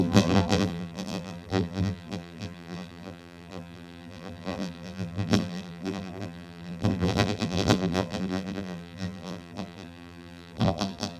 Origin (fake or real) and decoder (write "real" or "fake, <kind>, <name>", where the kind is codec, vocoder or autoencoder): fake, vocoder, BigVGAN v2